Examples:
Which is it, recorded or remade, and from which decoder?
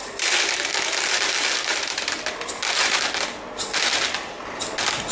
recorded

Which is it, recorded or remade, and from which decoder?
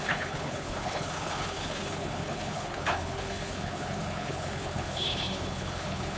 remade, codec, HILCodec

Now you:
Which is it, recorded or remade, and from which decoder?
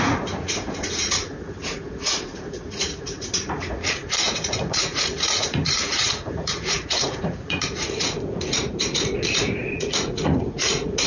remade, vocoder, Vocos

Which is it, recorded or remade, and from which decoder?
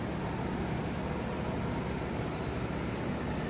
recorded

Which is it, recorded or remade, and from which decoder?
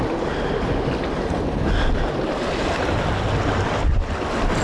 recorded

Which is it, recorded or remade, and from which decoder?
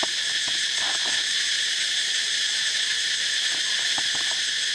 recorded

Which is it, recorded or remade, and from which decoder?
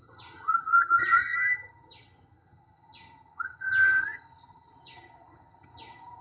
remade, vocoder, HiFi-GAN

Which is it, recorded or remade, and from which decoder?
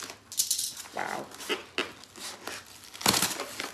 recorded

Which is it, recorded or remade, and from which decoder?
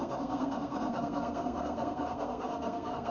remade, codec, SNAC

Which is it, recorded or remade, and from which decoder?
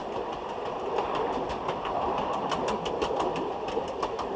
recorded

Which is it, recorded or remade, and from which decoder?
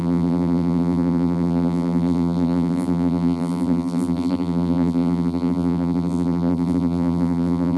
remade, vocoder, BigVGAN v2